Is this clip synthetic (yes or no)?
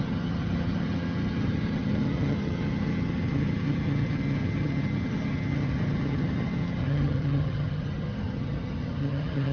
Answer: yes